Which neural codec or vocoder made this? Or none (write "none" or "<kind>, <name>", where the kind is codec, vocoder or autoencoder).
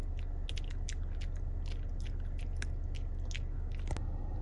none